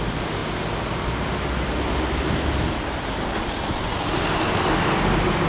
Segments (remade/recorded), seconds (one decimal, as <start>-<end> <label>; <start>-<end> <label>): 0.0-5.5 recorded